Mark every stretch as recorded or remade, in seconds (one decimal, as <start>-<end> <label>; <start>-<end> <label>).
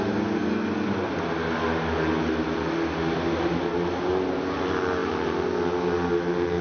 0.0-6.6 recorded